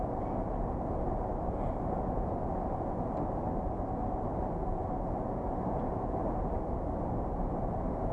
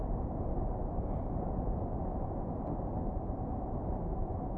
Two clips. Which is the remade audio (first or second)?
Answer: second